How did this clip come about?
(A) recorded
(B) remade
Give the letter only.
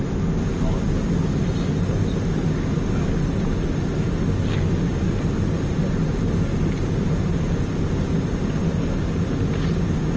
A